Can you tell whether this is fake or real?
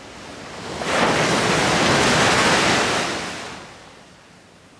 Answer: real